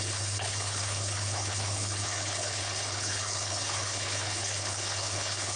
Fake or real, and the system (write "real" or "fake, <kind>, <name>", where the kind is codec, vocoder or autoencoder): fake, codec, HILCodec